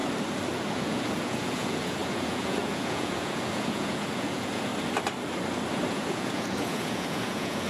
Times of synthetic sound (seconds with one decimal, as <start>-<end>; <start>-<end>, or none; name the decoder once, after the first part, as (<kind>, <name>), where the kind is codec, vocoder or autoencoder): 0.7-4.7 (vocoder, Vocos); 5.9-7.7